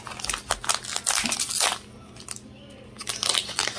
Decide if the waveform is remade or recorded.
recorded